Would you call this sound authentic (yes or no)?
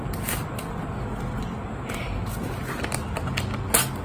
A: yes